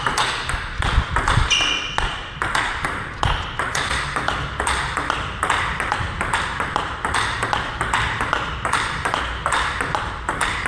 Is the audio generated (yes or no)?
no